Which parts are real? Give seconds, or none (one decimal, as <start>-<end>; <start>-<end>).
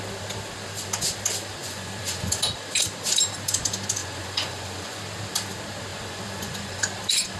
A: 0.0-1.6; 2.3-4.0; 5.0-5.9; 6.8-7.4